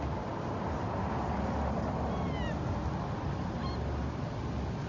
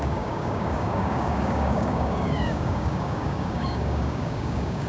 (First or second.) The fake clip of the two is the second